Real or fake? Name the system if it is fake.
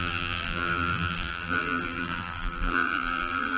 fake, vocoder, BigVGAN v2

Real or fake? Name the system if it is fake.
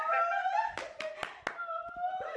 real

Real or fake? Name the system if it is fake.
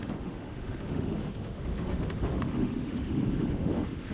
fake, autoencoder, DAC-VAE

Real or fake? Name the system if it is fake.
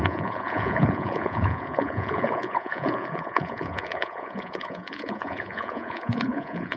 fake, vocoder, Vocos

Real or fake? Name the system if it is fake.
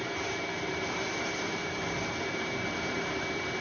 fake, vocoder, BigVGAN v2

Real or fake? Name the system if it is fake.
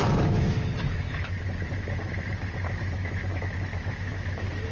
fake, autoencoder, DAC-VAE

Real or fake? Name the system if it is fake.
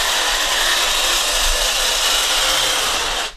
real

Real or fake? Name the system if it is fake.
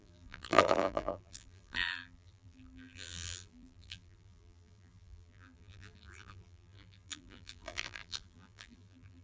fake, vocoder, BigVGAN v2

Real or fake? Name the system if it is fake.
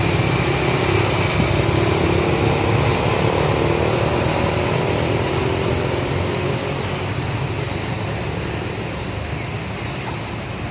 real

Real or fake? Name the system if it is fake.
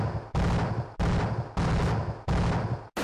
real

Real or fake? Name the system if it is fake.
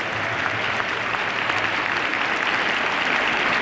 real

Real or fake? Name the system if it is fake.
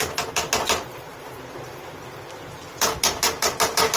real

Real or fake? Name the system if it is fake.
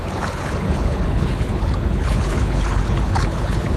fake, codec, HILCodec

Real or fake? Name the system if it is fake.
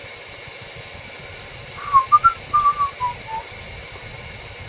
real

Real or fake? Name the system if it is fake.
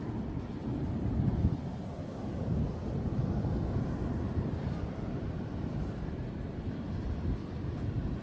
real